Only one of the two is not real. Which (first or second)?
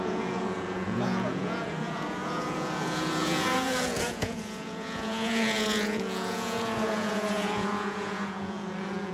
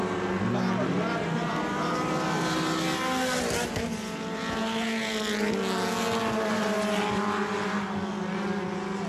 first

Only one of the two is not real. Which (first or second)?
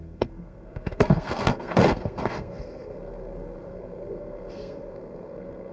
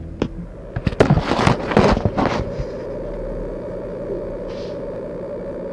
first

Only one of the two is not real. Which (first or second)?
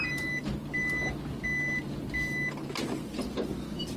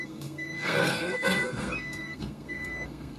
second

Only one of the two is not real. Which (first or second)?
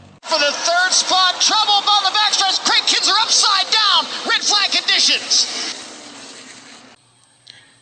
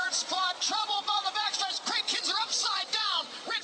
second